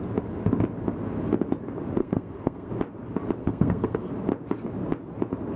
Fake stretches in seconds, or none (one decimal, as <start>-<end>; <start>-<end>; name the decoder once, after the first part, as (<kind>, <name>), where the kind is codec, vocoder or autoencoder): 2.0-2.7 (codec, SNAC); 3.4-4.1